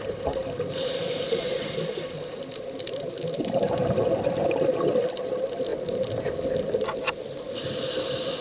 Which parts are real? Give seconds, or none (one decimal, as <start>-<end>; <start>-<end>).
none